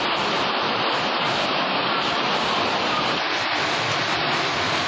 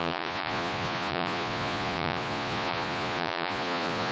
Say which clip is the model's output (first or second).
second